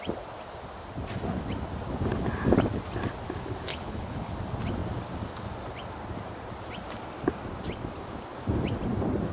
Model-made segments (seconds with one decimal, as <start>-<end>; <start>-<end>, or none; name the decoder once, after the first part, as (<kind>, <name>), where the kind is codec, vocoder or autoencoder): 3.7-4.3 (codec, HILCodec)